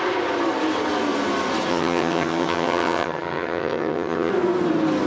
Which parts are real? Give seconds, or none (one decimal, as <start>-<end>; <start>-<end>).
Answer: 0.0-1.7; 4.3-5.1